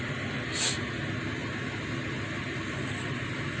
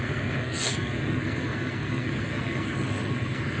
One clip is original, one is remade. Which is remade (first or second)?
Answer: second